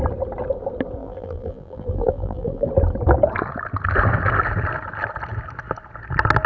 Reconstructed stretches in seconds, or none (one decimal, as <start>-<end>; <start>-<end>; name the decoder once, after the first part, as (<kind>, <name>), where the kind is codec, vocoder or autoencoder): 1.0-2.7 (vocoder, BigVGAN v2)